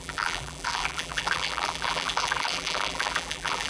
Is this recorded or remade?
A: remade